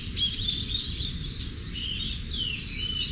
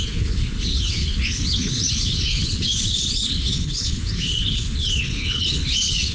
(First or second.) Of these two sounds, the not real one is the second